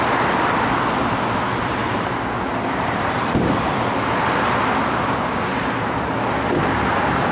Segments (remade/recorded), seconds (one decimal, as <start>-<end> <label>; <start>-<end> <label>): 0.0-1.8 recorded; 1.8-3.7 remade; 3.7-7.3 recorded